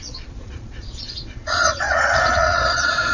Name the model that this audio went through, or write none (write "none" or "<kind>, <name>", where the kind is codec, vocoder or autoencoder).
vocoder, Vocos